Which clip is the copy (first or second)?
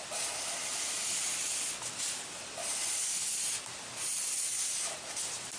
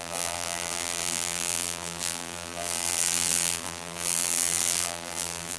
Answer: second